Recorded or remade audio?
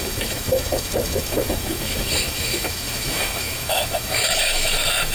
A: remade